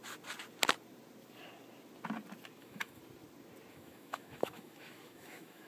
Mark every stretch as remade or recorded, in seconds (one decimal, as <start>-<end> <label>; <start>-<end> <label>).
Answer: 0.0-2.6 recorded; 2.6-3.0 remade; 3.0-3.7 recorded; 3.7-5.7 remade